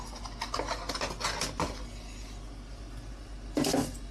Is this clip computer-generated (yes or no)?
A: no